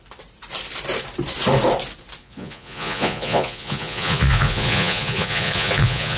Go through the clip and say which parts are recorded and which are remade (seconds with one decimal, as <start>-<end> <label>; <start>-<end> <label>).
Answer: 0.0-2.2 recorded; 2.2-6.2 remade